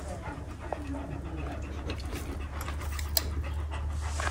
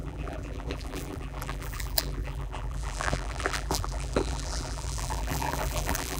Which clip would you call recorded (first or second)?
first